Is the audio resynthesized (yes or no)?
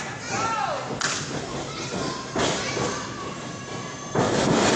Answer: no